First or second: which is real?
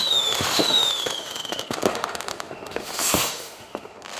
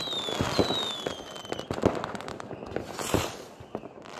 second